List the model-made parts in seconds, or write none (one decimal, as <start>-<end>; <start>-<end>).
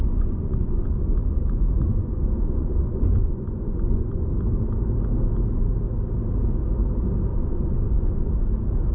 0.0-4.3; 7.3-8.3